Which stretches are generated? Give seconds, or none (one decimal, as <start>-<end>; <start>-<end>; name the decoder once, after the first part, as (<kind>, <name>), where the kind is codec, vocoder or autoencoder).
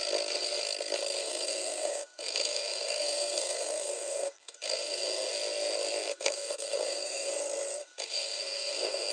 1.2-5.3 (codec, SNAC); 6.0-7.3; 7.8-9.1